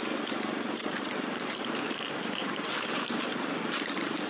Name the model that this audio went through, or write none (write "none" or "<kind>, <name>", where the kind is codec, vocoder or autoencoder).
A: vocoder, BigVGAN v2